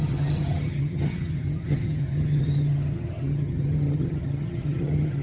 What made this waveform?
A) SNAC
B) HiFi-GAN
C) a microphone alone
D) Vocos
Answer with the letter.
B